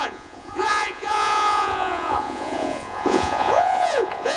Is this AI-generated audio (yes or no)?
yes